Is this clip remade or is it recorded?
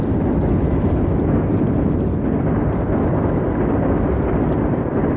recorded